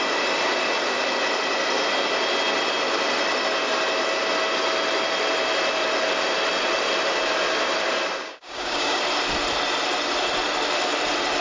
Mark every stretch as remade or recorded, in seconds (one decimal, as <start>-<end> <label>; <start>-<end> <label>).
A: 0.0-8.2 recorded; 8.2-9.0 remade; 9.0-11.4 recorded